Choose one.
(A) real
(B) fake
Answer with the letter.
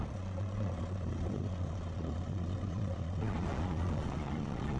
B